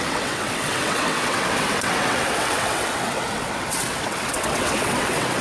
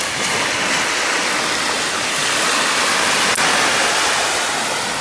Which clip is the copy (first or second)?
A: first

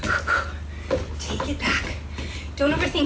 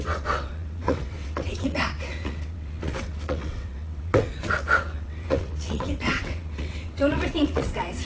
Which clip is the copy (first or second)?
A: second